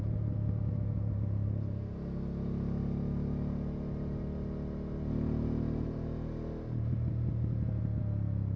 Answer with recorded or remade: recorded